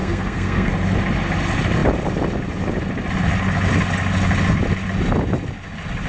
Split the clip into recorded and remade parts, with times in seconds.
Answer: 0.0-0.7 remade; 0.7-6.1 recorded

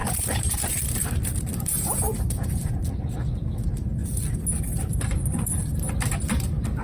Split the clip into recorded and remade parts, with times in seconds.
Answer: 0.0-2.8 remade; 2.8-5.6 recorded; 5.6-6.2 remade; 6.2-6.8 recorded

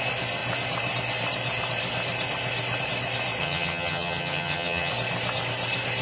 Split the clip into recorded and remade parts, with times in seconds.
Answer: 0.0-3.4 recorded; 3.4-4.9 remade; 4.9-6.0 recorded

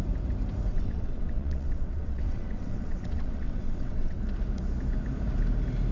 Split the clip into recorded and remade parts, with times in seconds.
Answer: 0.0-0.7 recorded; 0.7-4.2 remade; 4.2-5.9 recorded

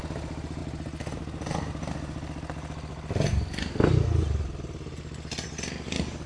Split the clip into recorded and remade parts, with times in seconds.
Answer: 0.0-6.3 recorded